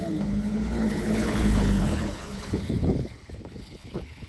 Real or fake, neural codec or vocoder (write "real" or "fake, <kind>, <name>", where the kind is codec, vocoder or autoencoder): fake, codec, HILCodec